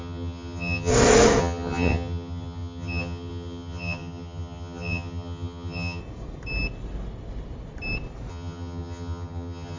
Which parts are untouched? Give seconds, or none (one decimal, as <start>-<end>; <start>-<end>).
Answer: 0.9-1.4; 6.0-8.3